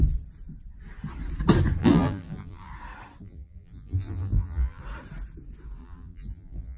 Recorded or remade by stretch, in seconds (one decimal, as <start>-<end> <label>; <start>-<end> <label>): 0.0-1.8 recorded; 1.8-2.7 remade; 2.7-3.2 recorded; 3.2-4.8 remade; 4.8-5.8 recorded; 5.8-6.8 remade